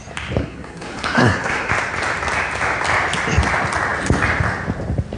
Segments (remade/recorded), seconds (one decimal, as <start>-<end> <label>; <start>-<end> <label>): 0.0-0.4 recorded; 0.4-1.7 remade; 1.7-5.2 recorded